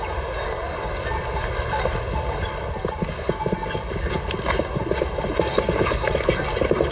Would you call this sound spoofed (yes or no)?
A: no